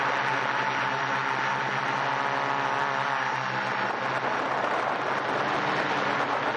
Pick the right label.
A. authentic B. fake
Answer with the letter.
A